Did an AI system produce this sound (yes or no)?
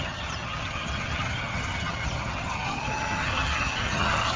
yes